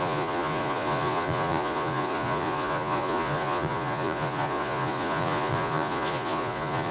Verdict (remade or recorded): remade